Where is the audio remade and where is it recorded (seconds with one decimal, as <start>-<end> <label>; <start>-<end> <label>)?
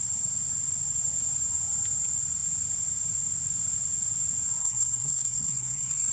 0.0-4.6 recorded; 4.6-6.1 remade